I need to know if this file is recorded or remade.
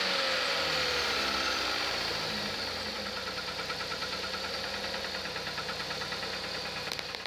recorded